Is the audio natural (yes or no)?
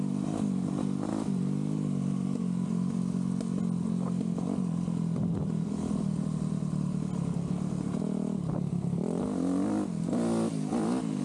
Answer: yes